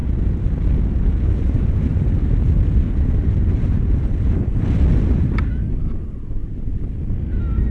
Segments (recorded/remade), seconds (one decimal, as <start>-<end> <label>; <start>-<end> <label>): 0.0-0.8 remade; 0.8-1.9 recorded; 1.9-4.9 remade; 4.9-7.7 recorded